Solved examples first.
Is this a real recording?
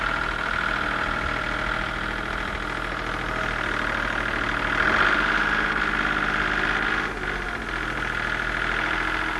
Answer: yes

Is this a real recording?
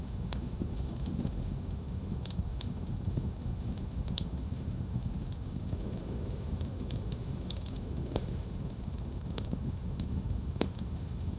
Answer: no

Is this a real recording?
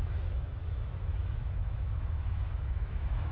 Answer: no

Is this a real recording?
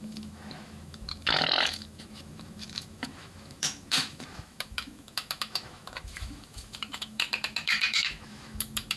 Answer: no